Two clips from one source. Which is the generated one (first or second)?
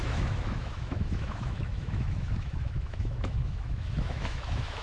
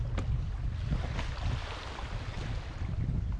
first